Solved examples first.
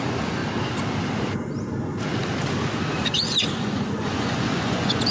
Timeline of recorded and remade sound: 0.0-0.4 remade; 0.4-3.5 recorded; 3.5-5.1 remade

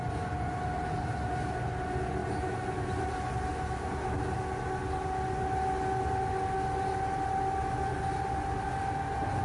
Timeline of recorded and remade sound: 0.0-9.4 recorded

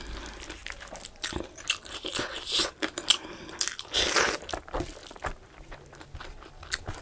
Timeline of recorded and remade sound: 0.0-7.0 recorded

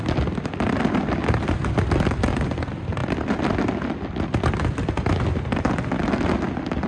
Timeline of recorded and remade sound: 0.0-6.9 recorded